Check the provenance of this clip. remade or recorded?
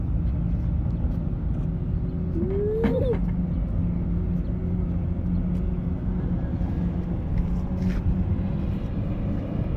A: recorded